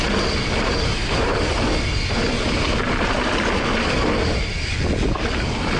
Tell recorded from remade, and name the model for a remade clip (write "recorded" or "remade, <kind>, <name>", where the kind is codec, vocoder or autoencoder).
recorded